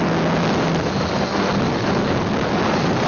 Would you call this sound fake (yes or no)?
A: no